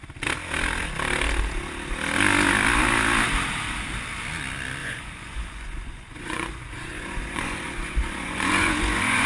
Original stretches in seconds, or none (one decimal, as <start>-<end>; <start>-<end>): 0.0-4.8